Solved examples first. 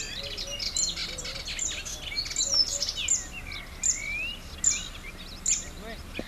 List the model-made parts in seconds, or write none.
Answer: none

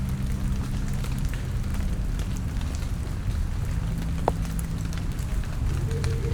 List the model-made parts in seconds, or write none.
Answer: 5.3-6.3 (vocoder, BigVGAN v2)

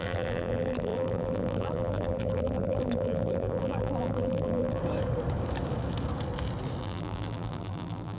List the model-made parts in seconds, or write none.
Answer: 0.0-4.8 (vocoder, BigVGAN v2); 6.8-8.2

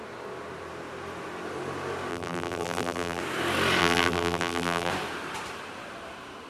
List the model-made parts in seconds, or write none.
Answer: 2.1-3.2 (vocoder, BigVGAN v2); 3.8-4.9

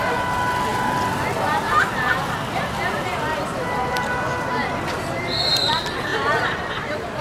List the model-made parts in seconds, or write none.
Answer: 6.1-7.2 (vocoder, BigVGAN v2)

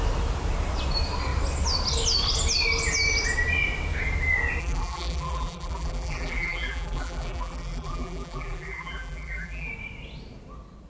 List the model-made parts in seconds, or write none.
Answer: 4.6-9.7 (vocoder, BigVGAN v2)

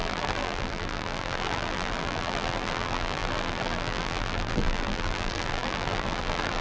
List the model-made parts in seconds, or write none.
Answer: 0.0-6.6 (vocoder, BigVGAN v2)